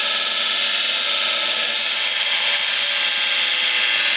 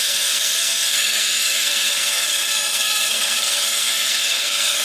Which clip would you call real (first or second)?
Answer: first